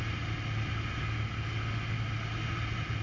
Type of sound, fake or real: real